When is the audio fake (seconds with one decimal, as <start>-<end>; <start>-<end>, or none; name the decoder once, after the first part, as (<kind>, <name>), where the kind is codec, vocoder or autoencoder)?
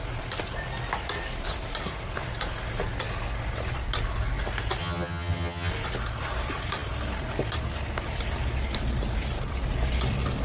4.8-5.7 (vocoder, HiFi-GAN)